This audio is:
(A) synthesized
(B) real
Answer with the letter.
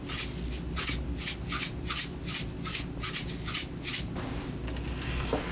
B